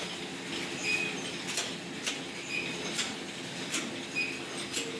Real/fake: real